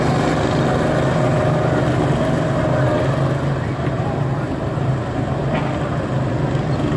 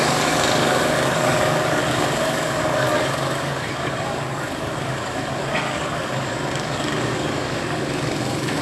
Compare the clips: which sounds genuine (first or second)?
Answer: first